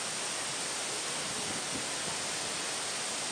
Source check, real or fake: real